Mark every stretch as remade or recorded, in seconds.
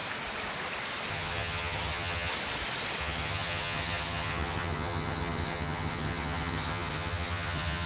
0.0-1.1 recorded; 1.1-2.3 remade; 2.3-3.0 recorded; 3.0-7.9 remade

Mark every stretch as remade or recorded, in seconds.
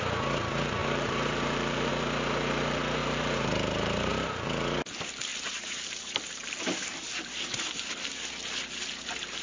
0.0-0.8 recorded; 0.8-1.9 remade; 1.9-3.0 recorded; 3.0-4.1 remade; 4.1-5.3 recorded; 5.3-6.6 remade; 6.6-9.4 recorded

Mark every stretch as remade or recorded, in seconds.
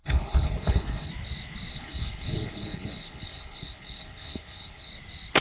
0.0-1.1 remade; 1.1-1.7 recorded; 1.7-4.9 remade; 4.9-5.4 recorded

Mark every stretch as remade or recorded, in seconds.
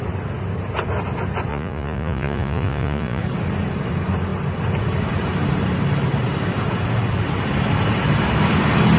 0.0-1.5 recorded; 1.5-3.2 remade; 3.2-9.0 recorded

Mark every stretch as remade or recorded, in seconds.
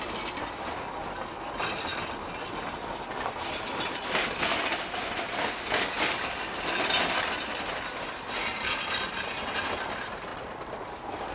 0.0-10.3 recorded; 10.3-10.9 remade; 10.9-11.3 recorded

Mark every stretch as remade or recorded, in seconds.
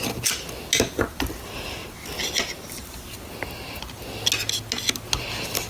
0.0-5.7 recorded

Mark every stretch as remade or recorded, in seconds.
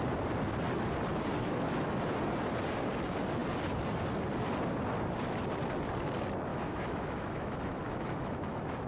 0.0-1.4 recorded; 1.4-2.1 remade; 2.1-6.5 recorded; 6.5-8.9 remade